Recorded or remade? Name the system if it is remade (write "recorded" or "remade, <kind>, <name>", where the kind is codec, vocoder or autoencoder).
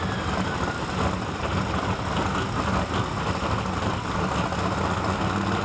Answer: recorded